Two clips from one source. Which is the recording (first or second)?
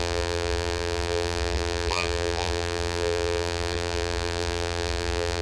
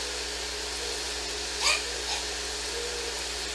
second